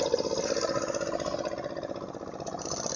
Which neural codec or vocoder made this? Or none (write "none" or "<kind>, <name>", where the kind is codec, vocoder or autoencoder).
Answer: none